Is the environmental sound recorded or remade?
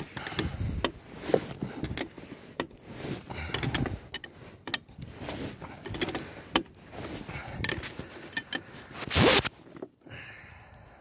recorded